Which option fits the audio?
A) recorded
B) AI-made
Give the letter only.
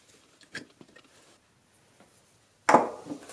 A